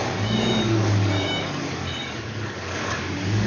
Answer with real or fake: fake